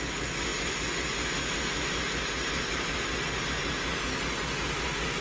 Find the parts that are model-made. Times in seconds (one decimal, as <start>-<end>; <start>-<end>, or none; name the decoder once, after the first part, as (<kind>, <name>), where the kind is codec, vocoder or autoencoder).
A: none